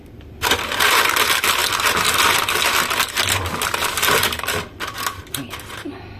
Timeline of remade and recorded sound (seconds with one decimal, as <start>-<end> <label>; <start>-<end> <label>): 0.0-6.2 recorded